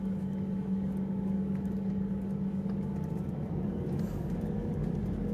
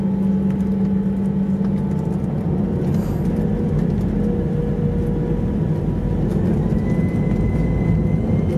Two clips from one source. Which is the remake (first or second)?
first